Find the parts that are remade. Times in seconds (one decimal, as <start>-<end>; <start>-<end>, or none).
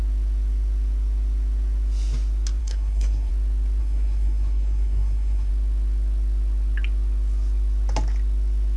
2.6-3.3; 3.8-5.5